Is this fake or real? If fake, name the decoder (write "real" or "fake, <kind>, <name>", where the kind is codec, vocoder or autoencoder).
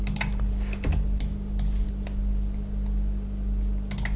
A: real